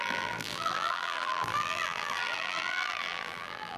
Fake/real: fake